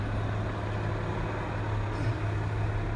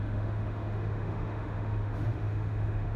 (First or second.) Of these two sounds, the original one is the first